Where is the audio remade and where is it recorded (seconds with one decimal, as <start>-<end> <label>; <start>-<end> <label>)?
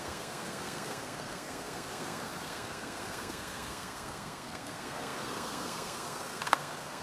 0.0-7.0 remade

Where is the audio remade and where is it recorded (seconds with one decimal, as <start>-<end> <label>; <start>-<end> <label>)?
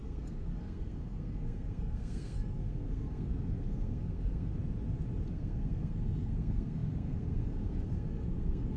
0.0-4.5 remade; 4.5-5.3 recorded; 5.3-8.8 remade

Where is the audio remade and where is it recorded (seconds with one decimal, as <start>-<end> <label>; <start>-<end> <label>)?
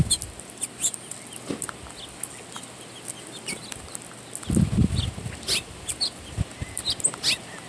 0.0-7.7 recorded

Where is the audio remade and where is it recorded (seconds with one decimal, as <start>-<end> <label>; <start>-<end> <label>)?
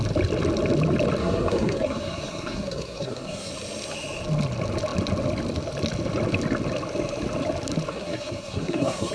0.0-1.2 recorded; 1.2-3.5 remade; 3.5-7.9 recorded; 7.9-9.1 remade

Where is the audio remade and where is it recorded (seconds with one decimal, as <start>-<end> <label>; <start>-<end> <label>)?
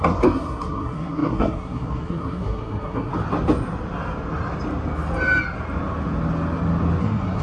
0.0-3.1 remade; 3.1-7.0 recorded; 7.0-7.4 remade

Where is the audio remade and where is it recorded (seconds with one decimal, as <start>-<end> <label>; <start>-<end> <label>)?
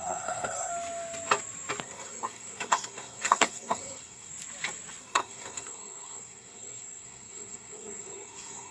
0.0-0.7 remade; 0.7-1.8 recorded; 1.8-4.3 remade; 4.3-5.0 recorded; 5.0-8.7 remade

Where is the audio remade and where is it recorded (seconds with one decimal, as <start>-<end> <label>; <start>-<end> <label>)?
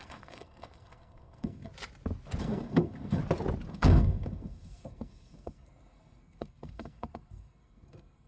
0.0-1.7 remade; 1.7-2.4 recorded; 2.4-3.2 remade; 3.2-3.7 recorded; 3.7-8.3 remade